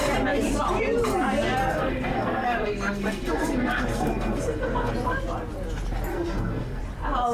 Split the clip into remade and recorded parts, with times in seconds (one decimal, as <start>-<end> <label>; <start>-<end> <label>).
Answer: 0.0-1.6 recorded; 1.6-4.9 remade; 4.9-6.1 recorded; 6.1-6.8 remade; 6.8-7.3 recorded